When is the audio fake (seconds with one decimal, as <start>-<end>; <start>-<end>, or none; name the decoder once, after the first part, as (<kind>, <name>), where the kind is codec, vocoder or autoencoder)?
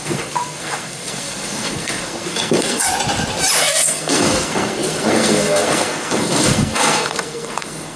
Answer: 0.0-2.9 (codec, SNAC); 3.6-8.0